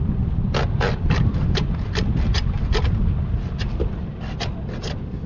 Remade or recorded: recorded